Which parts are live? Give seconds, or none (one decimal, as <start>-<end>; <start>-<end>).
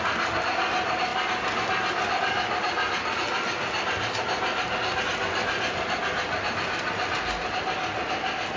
0.0-8.6